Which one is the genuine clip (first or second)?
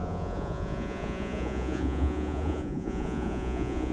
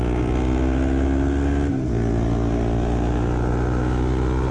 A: second